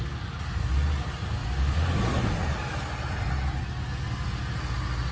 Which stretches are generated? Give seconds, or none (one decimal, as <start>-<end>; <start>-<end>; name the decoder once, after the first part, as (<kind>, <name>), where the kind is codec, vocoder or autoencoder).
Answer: 1.4-3.6 (vocoder, BigVGAN v2)